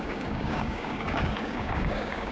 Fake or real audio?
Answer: fake